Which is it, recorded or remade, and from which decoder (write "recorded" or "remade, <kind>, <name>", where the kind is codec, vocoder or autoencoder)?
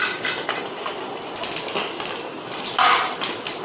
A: recorded